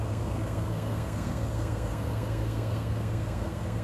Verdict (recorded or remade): remade